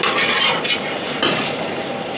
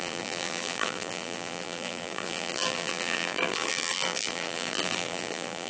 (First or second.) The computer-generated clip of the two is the second